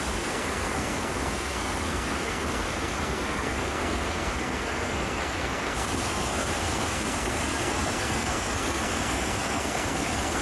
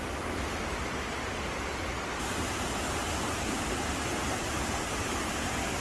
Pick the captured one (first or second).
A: second